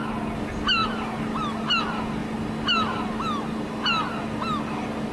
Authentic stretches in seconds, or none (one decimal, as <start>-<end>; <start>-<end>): 0.0-5.1